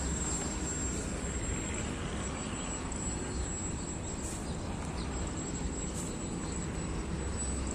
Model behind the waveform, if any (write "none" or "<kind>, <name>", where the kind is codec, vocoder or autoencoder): none